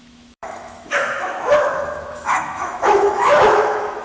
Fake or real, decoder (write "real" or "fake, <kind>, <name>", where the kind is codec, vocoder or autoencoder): fake, autoencoder, DAC-VAE